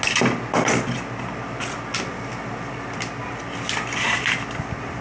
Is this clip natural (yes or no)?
yes